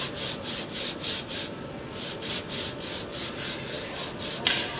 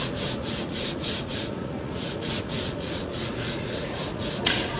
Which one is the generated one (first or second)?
second